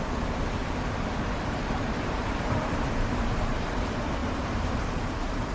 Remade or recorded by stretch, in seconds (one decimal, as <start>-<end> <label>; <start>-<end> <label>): 0.0-0.6 recorded; 0.6-3.8 remade; 3.8-4.2 recorded; 4.2-5.5 remade